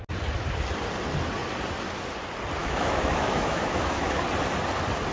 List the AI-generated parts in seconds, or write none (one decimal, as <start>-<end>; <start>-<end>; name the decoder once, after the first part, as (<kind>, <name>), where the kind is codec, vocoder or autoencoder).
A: 2.6-4.2 (autoencoder, DAC-VAE)